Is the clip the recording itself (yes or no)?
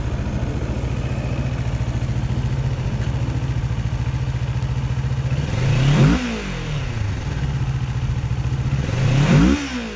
yes